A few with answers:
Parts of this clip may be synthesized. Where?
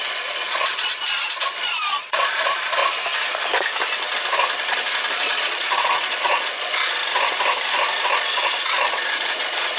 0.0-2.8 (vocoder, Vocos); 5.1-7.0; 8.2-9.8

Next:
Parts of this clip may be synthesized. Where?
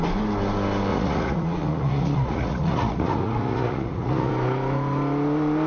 0.9-4.3 (vocoder, Vocos)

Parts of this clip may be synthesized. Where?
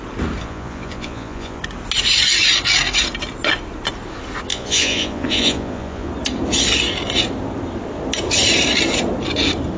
0.4-1.6 (vocoder, Vocos); 4.5-6.1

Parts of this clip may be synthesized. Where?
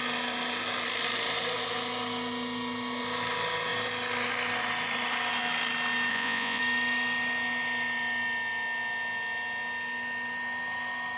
6.1-6.6 (vocoder, Vocos)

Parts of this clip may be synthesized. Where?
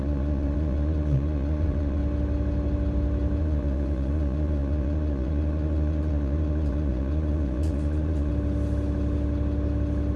0.0-2.0 (vocoder, Vocos); 3.4-8.3